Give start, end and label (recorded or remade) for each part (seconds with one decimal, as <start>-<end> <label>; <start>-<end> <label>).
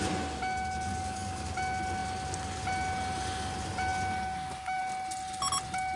0.0-0.9 recorded; 0.9-1.5 remade; 1.5-6.0 recorded